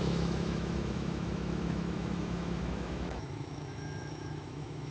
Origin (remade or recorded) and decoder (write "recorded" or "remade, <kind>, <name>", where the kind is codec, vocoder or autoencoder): remade, autoencoder, DAC-VAE